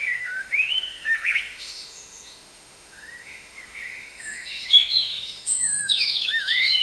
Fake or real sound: fake